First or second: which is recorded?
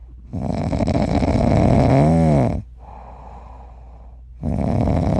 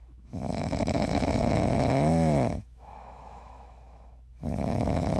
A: first